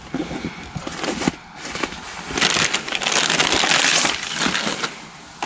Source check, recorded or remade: recorded